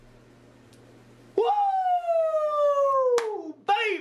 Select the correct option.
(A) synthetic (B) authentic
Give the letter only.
B